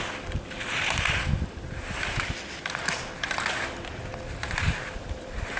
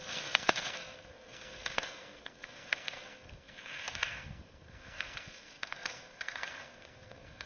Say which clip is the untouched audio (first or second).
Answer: first